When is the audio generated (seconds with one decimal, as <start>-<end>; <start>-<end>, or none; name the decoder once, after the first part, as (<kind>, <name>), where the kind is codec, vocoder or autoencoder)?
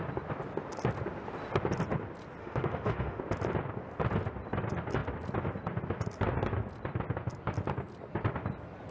2.4-3.2 (autoencoder, DAC-VAE)